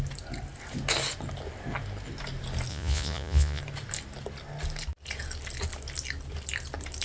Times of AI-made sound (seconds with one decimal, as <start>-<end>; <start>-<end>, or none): 2.7-3.6